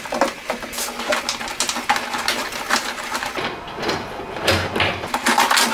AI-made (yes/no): no